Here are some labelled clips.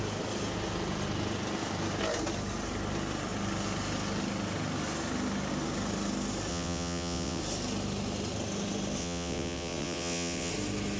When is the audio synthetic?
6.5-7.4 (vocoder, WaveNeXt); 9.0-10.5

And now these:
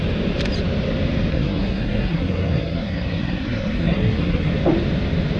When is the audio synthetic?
1.3-4.5 (codec, SNAC)

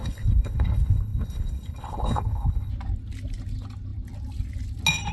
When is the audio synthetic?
0.0-2.7 (codec, HILCodec)

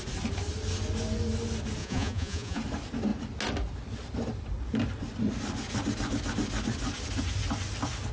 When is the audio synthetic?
1.8-2.6 (vocoder, Vocos)